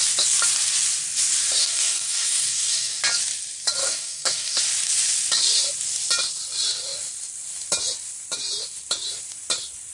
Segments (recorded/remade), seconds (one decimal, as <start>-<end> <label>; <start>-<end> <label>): 0.0-1.6 recorded; 1.6-3.0 remade; 3.0-3.8 recorded; 3.8-4.6 remade; 4.6-9.9 recorded